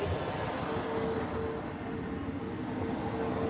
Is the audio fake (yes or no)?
no